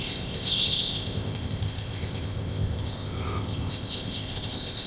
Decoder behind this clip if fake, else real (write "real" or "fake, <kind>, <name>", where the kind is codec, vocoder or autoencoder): fake, codec, ZipCodec